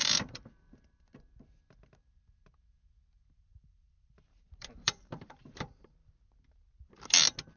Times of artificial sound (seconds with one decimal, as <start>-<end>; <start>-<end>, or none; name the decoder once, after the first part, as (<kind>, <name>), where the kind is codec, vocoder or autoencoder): 0.0-1.4 (vocoder, BigVGAN v2); 3.5-6.1